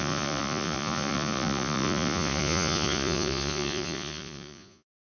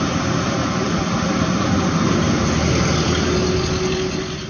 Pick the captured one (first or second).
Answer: second